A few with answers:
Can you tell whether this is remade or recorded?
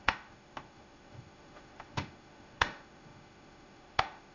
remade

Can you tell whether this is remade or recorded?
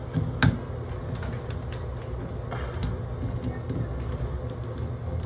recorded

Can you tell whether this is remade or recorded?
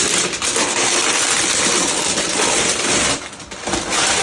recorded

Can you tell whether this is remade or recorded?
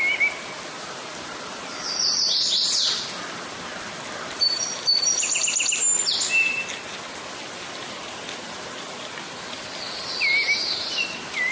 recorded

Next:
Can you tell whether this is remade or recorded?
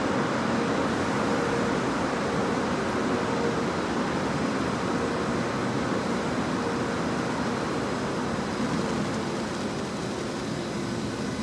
recorded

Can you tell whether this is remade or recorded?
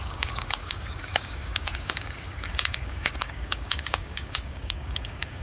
remade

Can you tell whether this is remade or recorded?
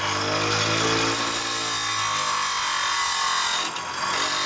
recorded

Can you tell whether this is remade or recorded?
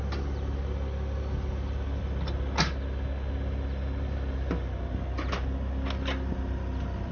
recorded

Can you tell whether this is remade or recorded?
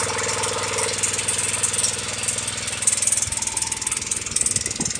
recorded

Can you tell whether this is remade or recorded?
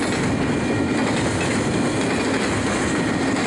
recorded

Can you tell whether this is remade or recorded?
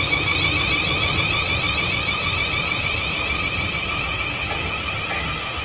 recorded